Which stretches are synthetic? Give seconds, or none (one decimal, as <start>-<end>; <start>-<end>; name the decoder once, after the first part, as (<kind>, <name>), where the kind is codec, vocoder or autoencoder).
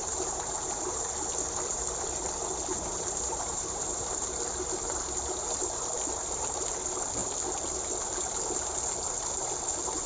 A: 0.0-1.1 (vocoder, BigVGAN v2); 2.7-4.4